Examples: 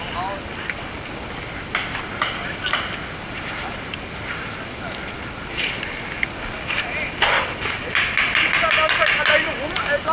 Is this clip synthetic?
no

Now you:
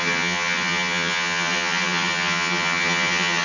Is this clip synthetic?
yes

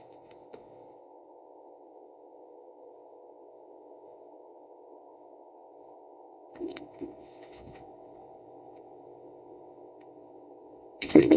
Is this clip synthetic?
yes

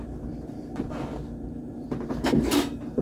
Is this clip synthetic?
yes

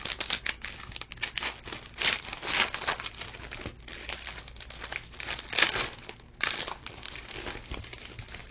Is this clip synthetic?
no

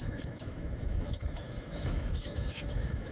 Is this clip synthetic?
yes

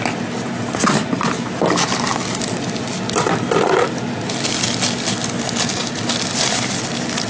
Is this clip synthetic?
no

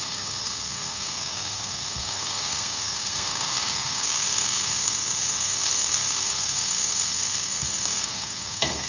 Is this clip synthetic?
yes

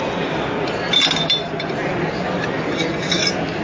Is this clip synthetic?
no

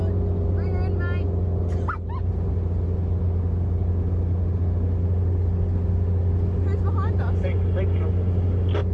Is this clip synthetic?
no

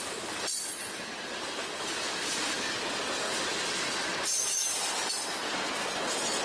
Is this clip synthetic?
no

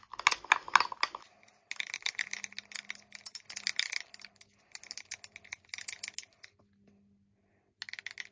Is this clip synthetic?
no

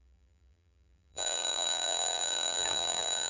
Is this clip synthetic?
yes